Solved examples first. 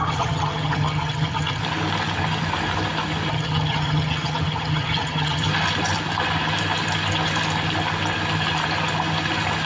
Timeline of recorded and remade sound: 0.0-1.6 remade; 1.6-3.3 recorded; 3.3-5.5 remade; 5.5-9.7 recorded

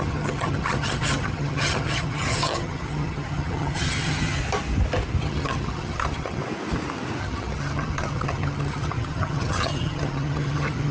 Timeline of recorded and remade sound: 0.0-4.4 remade; 4.4-5.2 recorded; 5.2-6.4 remade; 6.4-7.2 recorded; 7.2-10.9 remade

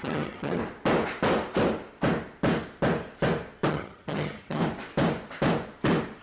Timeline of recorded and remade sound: 0.0-0.6 remade; 0.6-3.7 recorded; 3.7-4.6 remade; 4.6-6.2 recorded

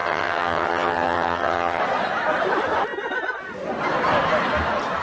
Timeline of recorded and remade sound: 0.0-1.8 remade; 1.8-5.0 recorded

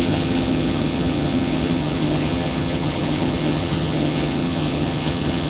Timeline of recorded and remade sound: 0.0-5.5 remade